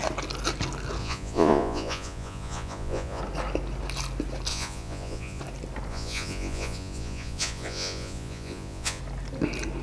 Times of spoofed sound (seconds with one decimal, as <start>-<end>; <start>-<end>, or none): 1.0-3.2; 4.5-5.4; 5.9-9.0